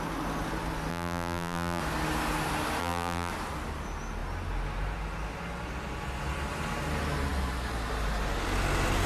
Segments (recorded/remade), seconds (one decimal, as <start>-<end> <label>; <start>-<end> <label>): 0.0-0.9 recorded; 0.9-1.8 remade; 1.8-2.8 recorded; 2.8-3.3 remade; 3.3-9.1 recorded